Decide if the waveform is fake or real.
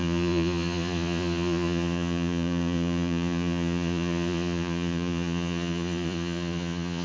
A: fake